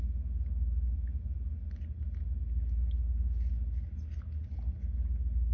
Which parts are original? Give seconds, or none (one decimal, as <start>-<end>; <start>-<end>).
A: 0.0-5.5